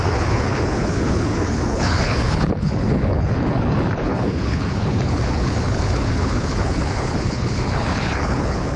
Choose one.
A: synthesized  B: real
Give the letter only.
A